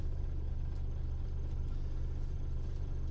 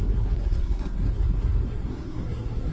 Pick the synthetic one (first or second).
second